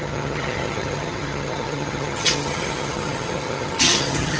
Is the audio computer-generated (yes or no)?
yes